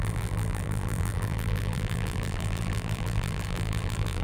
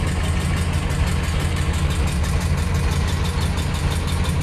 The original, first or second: second